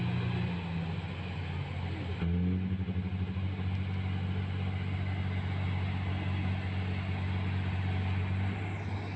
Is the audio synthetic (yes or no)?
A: no